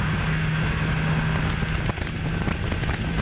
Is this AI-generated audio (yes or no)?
no